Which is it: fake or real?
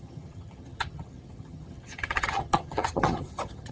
fake